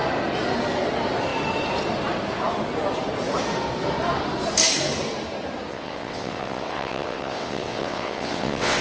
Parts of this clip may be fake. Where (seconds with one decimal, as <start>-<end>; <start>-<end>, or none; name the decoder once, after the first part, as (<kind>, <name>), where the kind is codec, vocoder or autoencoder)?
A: 5.7-8.8 (vocoder, WaveNeXt)